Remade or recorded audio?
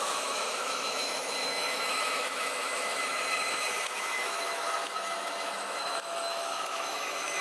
remade